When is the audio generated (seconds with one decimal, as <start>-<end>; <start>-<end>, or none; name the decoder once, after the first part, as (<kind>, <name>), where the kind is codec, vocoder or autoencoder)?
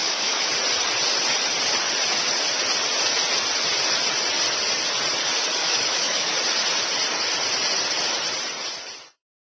0.0-0.5 (autoencoder, DAC-VAE); 5.6-6.3